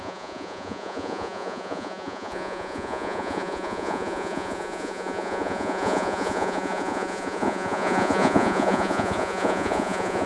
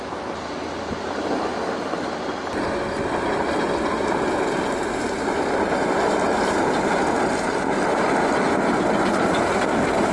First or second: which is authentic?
second